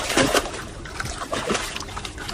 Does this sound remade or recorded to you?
recorded